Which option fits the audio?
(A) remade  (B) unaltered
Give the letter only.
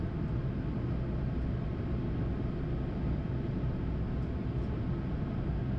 B